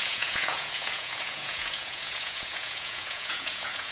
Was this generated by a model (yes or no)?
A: yes